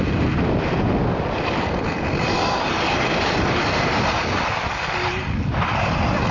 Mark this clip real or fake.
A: real